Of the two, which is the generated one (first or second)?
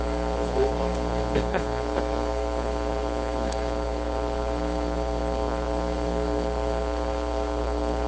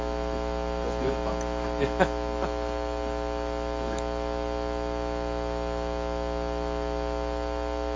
first